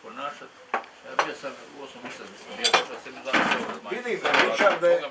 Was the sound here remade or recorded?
recorded